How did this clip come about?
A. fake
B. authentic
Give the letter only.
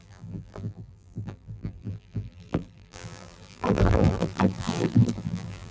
A